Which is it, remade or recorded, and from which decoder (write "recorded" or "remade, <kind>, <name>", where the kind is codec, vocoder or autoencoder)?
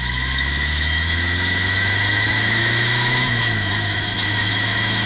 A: remade, autoencoder, DAC-VAE